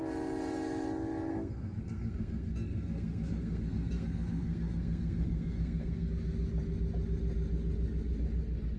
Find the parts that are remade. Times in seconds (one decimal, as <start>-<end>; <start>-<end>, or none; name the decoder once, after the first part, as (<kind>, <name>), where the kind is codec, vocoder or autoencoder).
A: 1.3-6.1 (codec, SNAC)